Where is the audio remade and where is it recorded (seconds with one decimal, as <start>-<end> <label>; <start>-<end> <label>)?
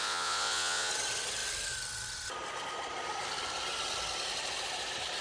0.0-0.9 remade; 0.9-5.2 recorded